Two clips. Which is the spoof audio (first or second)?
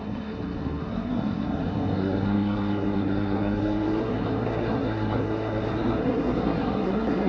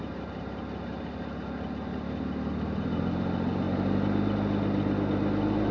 first